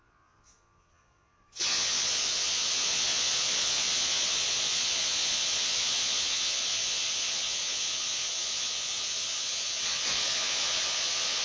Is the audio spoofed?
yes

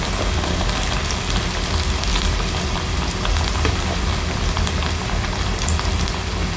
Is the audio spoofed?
yes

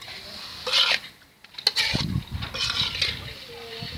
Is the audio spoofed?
no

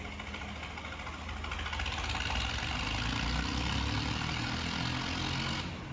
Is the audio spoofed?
no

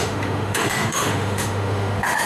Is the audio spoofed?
yes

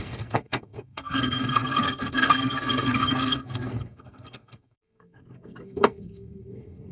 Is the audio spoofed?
yes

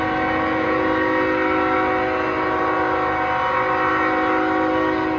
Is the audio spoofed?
no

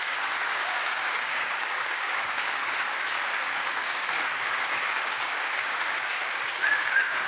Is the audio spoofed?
yes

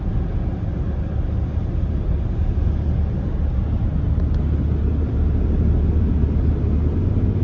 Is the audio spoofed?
no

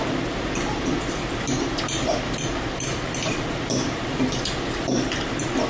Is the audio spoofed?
yes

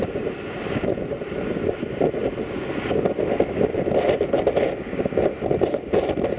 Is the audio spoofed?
no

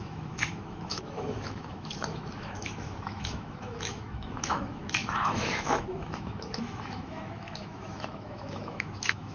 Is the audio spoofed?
yes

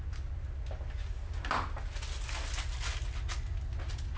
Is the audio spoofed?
no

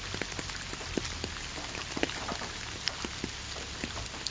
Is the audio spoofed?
no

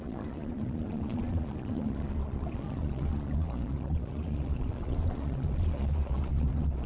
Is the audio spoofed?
yes